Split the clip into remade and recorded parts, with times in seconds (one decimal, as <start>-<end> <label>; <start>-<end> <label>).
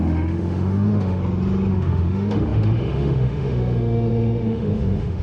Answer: 0.0-1.2 remade; 1.2-1.7 recorded; 1.7-5.2 remade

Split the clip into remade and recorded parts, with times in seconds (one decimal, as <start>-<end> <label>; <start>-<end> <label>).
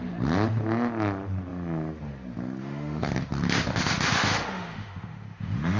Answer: 0.0-2.6 recorded; 2.6-3.1 remade; 3.1-3.8 recorded; 3.8-5.8 remade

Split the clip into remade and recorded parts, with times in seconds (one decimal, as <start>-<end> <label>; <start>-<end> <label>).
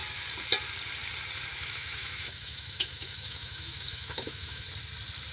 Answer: 0.0-1.5 recorded; 1.5-4.7 remade; 4.7-5.3 recorded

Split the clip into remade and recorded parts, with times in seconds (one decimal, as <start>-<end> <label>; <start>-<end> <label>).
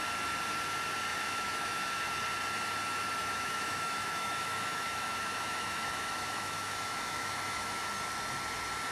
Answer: 0.0-1.1 recorded; 1.1-2.1 remade; 2.1-3.2 recorded; 3.2-7.9 remade; 7.9-8.9 recorded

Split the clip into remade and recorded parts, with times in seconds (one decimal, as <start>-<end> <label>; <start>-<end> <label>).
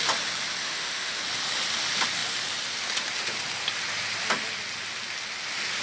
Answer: 0.0-0.6 recorded; 0.6-1.2 remade; 1.2-5.8 recorded